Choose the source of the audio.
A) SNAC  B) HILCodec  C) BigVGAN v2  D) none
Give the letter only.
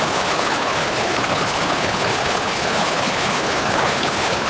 B